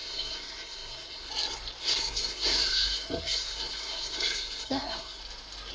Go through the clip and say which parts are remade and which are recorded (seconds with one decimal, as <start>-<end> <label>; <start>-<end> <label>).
0.0-1.3 remade; 1.3-1.8 recorded; 1.8-5.2 remade; 5.2-5.7 recorded